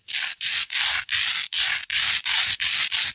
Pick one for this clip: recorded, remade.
recorded